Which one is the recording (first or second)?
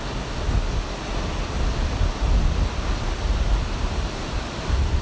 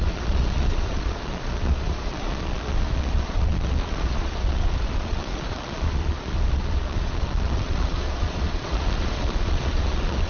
first